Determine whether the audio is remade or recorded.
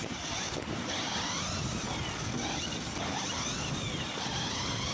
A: recorded